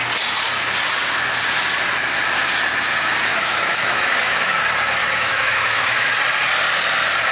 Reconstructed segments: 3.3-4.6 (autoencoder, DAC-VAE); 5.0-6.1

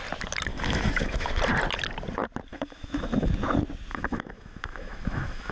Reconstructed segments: 0.5-1.3 (autoencoder, DAC-VAE); 2.5-3.3; 3.9-5.5

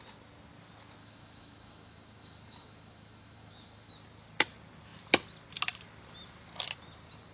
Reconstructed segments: 1.0-3.9 (autoencoder, DAC-VAE)

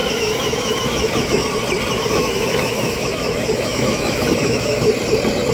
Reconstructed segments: 0.0-1.4 (autoencoder, DAC-VAE); 1.9-4.8

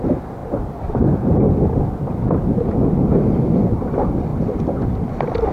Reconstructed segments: none

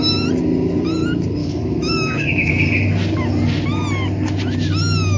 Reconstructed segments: 1.4-2.5 (autoencoder, DAC-VAE)